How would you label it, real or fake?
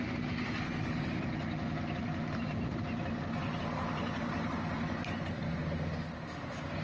real